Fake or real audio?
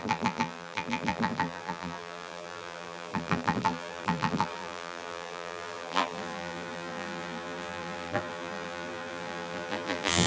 fake